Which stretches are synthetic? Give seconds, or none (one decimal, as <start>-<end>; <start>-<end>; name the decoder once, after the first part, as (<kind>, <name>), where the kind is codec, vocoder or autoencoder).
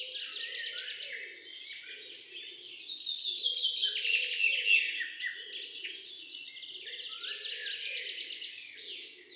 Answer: 5.7-6.4 (vocoder, Vocos)